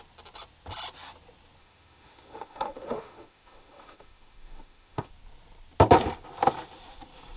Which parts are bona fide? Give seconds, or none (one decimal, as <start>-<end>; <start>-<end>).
0.0-1.6; 5.1-7.4